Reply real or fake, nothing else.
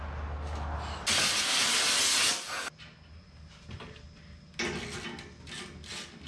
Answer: real